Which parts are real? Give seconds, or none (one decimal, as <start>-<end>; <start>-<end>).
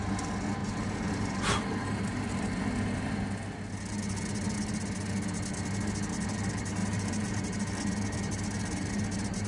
0.0-0.6; 2.0-6.8; 7.3-9.5